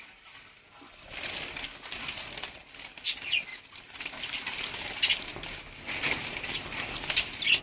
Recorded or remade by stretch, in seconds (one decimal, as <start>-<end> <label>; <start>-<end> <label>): 0.0-3.5 recorded; 3.5-7.6 remade